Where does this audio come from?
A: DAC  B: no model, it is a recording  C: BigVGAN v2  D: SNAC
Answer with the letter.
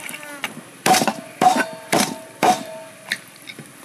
C